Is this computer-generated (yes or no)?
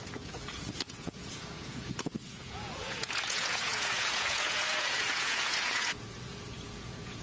yes